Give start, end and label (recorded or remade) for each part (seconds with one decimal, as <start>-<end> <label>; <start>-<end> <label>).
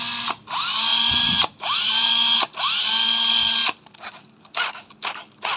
0.0-0.9 recorded; 0.9-2.1 remade; 2.1-5.6 recorded